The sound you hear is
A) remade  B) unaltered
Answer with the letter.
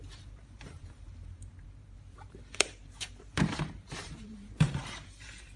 A